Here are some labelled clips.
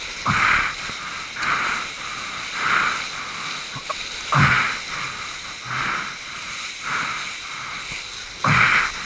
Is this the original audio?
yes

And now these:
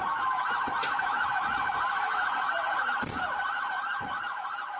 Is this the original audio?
no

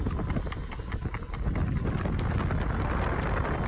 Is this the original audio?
yes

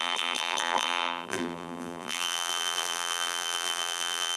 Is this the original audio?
no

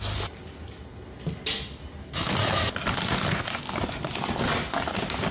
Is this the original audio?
yes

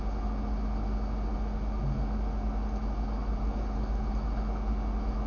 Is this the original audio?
yes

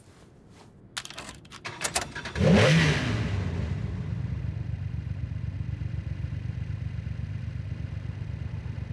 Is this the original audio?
yes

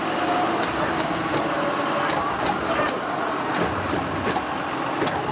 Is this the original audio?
yes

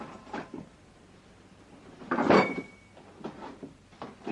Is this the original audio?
no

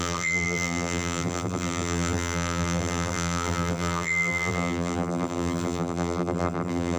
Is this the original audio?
no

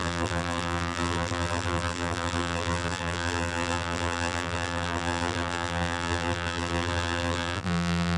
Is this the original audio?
no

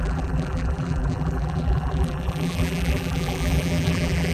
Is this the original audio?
no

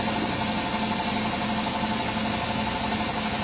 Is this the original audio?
yes